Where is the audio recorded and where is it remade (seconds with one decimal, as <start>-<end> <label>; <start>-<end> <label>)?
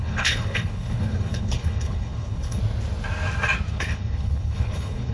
0.0-2.6 remade; 2.6-3.7 recorded; 3.7-5.1 remade